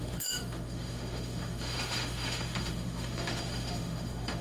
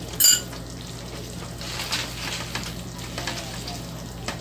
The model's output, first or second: first